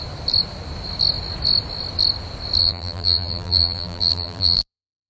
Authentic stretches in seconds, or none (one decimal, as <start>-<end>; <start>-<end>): 0.0-2.6